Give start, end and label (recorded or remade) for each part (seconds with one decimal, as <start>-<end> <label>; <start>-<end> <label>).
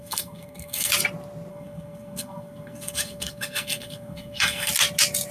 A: 0.0-0.9 remade; 0.9-1.5 recorded; 1.5-4.7 remade; 4.7-5.3 recorded